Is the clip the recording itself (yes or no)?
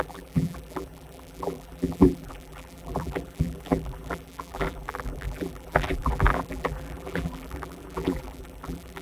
no